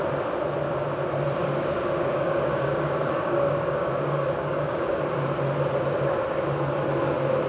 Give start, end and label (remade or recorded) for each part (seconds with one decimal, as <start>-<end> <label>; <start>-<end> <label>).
0.0-1.4 recorded; 1.4-5.0 remade; 5.0-7.5 recorded